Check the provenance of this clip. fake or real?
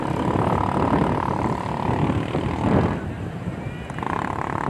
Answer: real